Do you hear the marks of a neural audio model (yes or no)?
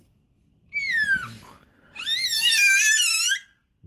no